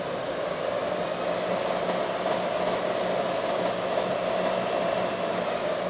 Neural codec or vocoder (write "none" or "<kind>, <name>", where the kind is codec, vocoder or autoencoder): none